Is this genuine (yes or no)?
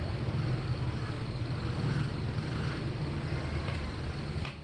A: yes